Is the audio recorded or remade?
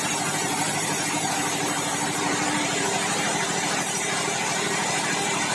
remade